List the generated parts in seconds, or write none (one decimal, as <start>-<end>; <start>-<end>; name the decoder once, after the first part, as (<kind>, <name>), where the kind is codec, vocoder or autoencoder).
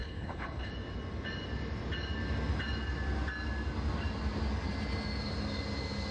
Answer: 0.0-0.7 (codec, HILCodec)